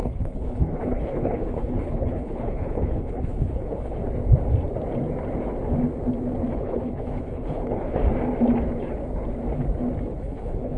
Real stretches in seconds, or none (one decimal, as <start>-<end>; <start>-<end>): 4.0-6.5; 8.0-10.1